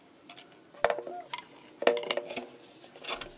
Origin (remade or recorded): recorded